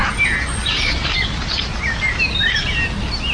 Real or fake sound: real